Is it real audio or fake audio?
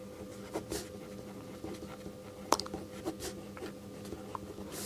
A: real